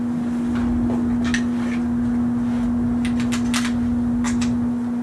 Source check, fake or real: real